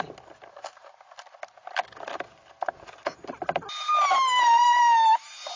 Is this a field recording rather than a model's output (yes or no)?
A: yes